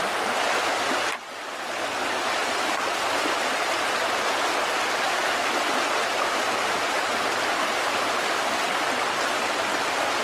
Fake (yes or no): no